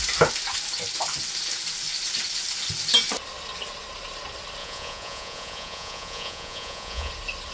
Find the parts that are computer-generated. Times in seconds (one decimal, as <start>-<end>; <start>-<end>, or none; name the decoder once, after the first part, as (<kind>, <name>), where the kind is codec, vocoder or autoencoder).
4.6-7.1 (vocoder, Vocos)